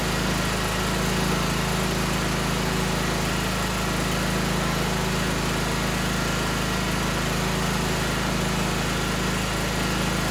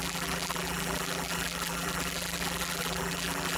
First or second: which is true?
first